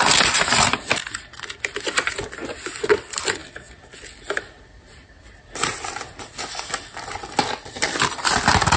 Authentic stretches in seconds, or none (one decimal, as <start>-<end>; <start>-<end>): 0.0-8.8